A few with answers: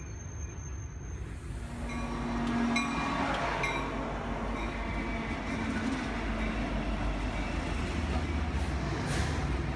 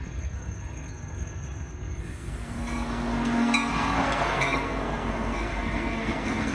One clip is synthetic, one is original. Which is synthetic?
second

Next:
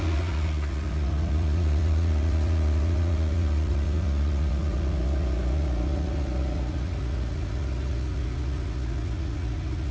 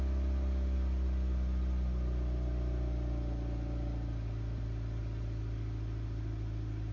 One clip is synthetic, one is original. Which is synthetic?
first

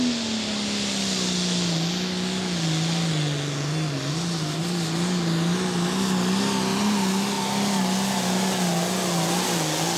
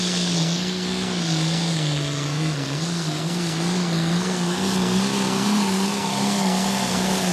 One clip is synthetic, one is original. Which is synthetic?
second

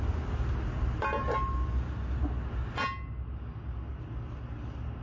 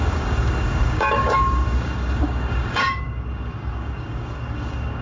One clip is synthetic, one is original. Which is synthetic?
second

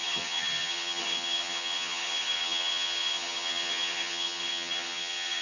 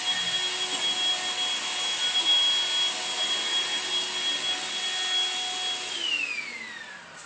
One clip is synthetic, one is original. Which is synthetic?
first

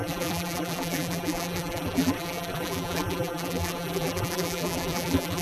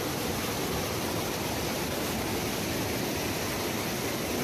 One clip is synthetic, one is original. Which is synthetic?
first